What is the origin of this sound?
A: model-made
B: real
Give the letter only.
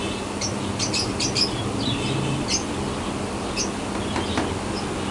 B